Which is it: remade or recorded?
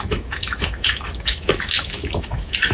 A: remade